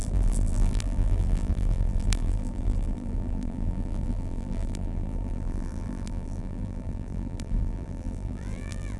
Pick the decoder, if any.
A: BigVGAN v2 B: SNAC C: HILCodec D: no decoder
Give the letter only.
A